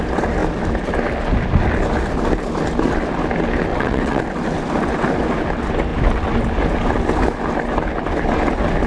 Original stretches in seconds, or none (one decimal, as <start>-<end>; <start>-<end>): 0.0-3.7; 4.2-8.9